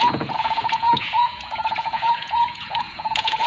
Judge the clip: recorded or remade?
remade